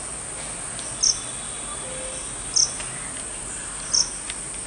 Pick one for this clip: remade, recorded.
recorded